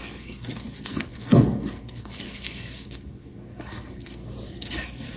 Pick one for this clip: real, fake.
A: fake